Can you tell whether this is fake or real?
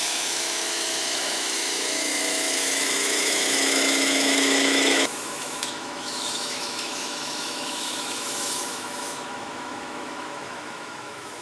fake